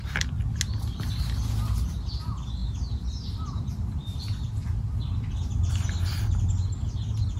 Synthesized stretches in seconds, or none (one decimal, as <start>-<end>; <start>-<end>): none